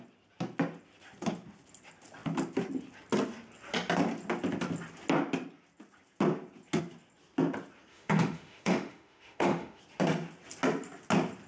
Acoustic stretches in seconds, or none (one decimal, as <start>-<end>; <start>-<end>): 0.0-7.9; 9.8-11.5